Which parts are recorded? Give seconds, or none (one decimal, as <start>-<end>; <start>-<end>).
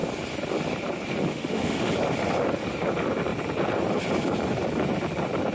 0.0-1.3; 1.9-5.5